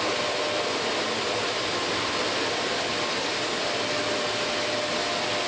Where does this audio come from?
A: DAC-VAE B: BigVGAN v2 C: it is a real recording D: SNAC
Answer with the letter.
C